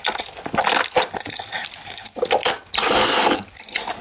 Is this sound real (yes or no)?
yes